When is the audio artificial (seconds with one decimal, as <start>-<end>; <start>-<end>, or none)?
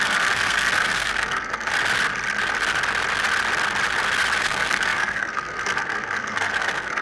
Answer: 0.0-1.7; 4.4-7.0